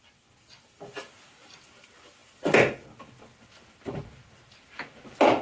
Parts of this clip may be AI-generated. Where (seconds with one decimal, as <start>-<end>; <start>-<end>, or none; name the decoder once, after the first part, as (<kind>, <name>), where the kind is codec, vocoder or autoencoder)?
none

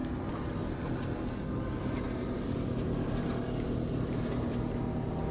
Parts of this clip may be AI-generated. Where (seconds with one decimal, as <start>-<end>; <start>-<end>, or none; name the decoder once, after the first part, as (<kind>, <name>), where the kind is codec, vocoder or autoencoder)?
none

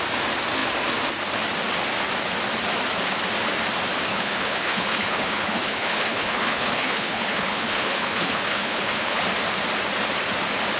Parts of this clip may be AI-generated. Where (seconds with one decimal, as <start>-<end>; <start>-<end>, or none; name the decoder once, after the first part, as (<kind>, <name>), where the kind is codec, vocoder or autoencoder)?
4.1-9.2 (codec, HILCodec)

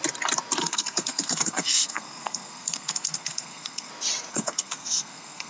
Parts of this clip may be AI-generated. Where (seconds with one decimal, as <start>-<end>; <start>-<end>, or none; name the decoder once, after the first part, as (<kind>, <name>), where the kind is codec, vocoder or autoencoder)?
0.6-3.9 (codec, SNAC); 4.3-5.5

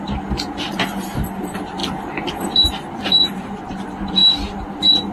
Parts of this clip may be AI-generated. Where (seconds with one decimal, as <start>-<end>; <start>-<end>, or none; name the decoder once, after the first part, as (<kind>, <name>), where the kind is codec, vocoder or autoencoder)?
none

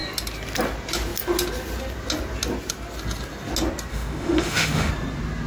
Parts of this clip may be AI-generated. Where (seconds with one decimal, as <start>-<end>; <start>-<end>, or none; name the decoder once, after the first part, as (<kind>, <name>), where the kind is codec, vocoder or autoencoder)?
3.9-4.9 (autoencoder, DAC-VAE)